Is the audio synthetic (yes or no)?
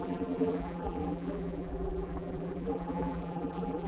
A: yes